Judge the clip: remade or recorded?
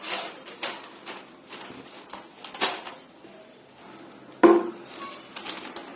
recorded